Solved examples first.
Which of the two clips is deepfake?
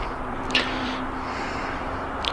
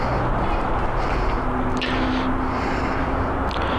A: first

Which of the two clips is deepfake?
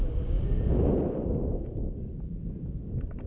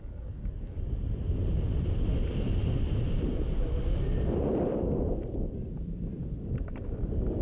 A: second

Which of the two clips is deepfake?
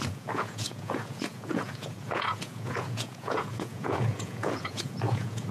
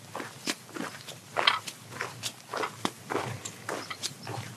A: first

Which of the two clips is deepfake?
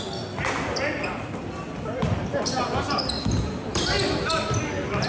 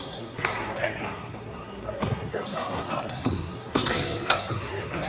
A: second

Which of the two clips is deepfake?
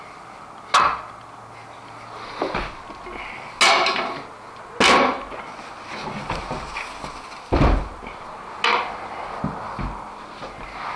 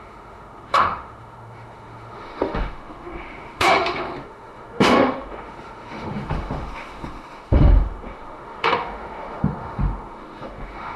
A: second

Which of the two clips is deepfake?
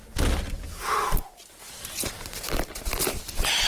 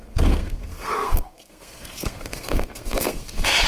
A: second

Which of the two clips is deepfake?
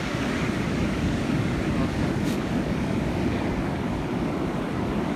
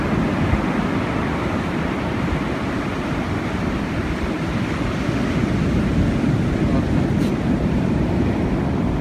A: first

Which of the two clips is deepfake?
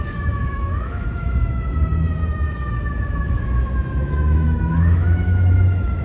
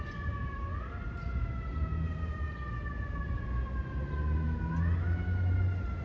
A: first